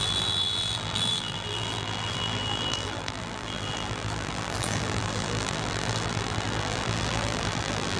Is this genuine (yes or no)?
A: no